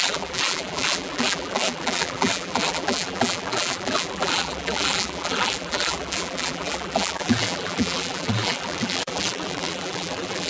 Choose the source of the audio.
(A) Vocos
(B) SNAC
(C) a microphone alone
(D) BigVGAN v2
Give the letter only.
D